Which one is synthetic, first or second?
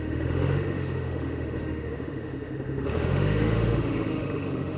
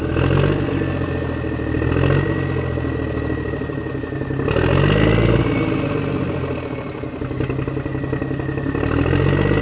first